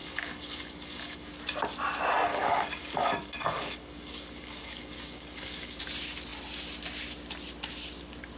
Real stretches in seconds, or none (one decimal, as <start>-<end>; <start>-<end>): 1.3-2.3; 5.8-8.4